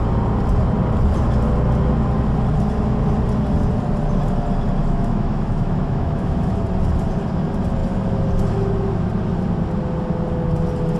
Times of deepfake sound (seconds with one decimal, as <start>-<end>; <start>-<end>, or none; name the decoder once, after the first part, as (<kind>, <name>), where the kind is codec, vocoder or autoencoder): 4.8-6.5 (autoencoder, DAC-VAE)